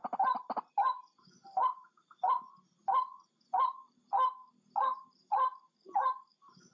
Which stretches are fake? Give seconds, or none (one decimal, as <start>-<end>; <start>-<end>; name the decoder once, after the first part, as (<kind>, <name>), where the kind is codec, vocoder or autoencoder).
none